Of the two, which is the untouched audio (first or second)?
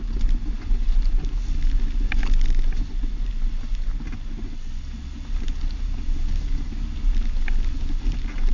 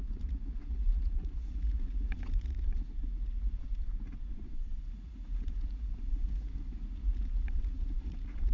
first